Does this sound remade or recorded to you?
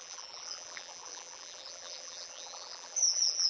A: remade